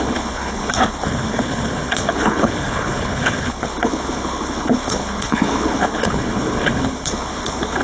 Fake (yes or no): yes